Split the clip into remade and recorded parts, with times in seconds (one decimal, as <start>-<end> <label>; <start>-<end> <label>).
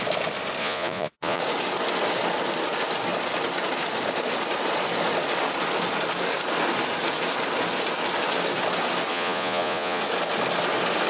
0.0-0.6 recorded; 0.6-1.4 remade; 1.4-9.1 recorded; 9.1-10.0 remade; 10.0-11.1 recorded